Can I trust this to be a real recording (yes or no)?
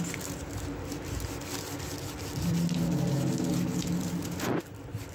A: yes